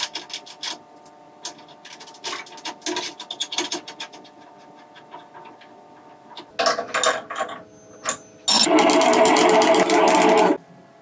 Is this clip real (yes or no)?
yes